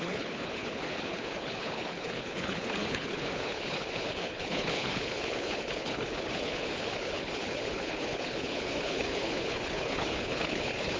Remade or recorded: remade